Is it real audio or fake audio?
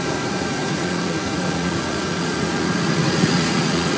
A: fake